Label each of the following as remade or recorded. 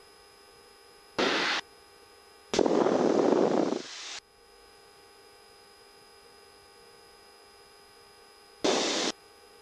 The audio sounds recorded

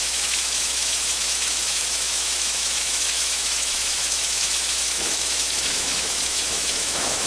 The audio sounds remade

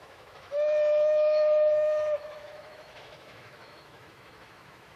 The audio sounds remade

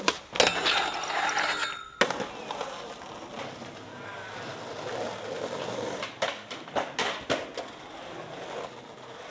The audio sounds recorded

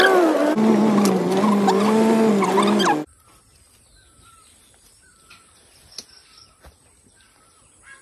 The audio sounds recorded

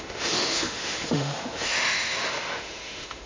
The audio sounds remade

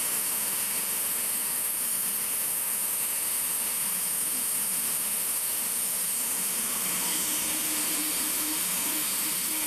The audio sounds remade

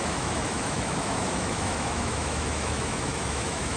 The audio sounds remade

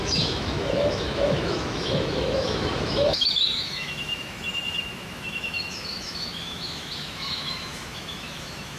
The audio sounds remade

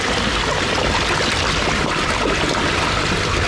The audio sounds recorded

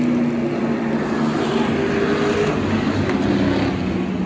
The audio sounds recorded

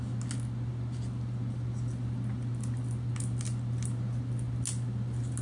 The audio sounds recorded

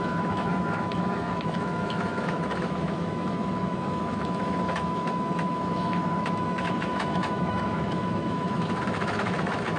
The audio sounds remade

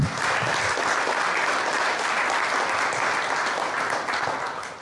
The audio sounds recorded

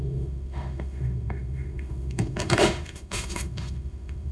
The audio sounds remade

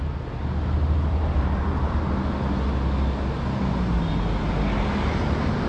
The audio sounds recorded